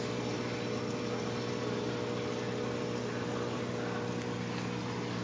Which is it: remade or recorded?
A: recorded